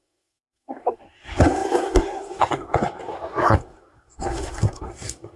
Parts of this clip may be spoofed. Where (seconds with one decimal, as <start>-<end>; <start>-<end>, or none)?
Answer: 0.0-5.4